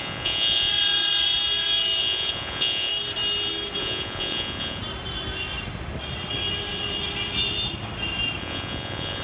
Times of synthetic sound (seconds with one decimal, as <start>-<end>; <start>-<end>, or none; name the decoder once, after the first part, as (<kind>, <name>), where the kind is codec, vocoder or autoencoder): 0.0-0.7 (vocoder, Vocos); 2.0-2.9; 3.8-4.8; 8.4-9.2